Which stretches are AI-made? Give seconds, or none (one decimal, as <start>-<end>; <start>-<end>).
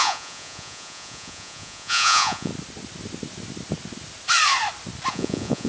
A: 0.0-2.5; 5.1-5.7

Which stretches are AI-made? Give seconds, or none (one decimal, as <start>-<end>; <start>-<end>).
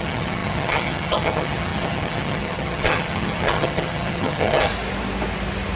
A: 0.0-4.7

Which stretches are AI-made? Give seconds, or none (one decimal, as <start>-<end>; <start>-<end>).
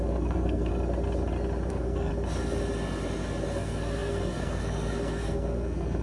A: 0.0-0.7; 1.7-2.1; 3.5-6.0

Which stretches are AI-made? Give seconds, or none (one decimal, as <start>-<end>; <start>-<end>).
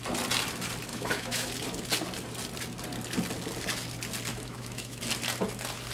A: 0.9-1.5; 4.3-5.0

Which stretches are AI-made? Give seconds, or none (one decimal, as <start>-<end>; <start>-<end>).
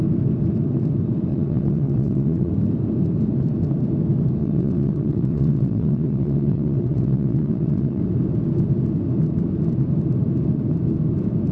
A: 1.3-2.5; 4.4-8.0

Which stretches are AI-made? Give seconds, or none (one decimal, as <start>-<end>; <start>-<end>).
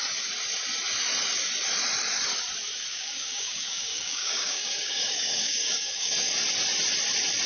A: 2.9-6.3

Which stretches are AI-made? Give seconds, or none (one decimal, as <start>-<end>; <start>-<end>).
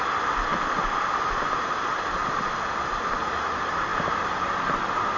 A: 0.5-1.2; 2.2-2.8; 3.9-4.7